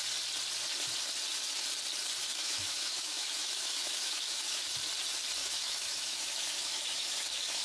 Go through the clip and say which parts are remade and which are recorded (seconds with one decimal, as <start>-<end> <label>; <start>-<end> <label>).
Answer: 0.0-2.3 recorded; 2.3-4.6 remade; 4.6-5.4 recorded; 5.4-7.6 remade